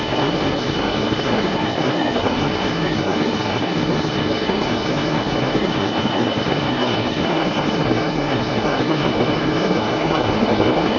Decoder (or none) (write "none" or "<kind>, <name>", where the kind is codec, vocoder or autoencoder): codec, SNAC